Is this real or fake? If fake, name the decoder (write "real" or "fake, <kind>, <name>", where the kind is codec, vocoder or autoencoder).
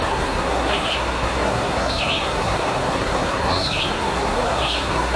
fake, codec, SNAC